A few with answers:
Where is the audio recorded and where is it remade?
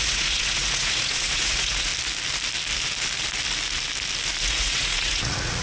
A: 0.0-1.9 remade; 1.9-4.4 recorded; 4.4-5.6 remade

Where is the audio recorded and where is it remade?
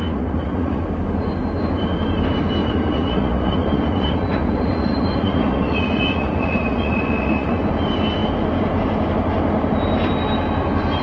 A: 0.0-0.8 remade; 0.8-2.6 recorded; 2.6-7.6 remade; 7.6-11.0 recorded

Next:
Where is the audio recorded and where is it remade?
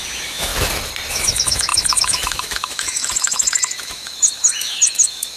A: 0.0-0.5 remade; 0.5-1.1 recorded; 1.1-5.4 remade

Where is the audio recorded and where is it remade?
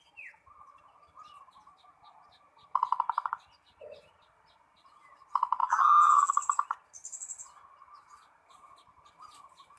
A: 0.0-5.6 recorded; 5.6-6.3 remade; 6.3-9.8 recorded